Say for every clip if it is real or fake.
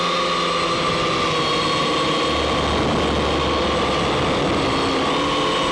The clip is real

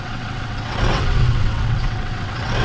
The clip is fake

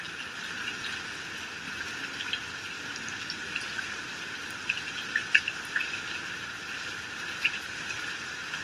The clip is real